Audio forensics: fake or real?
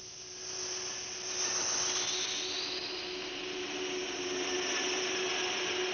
real